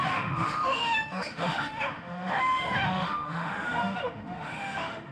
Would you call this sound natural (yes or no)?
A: no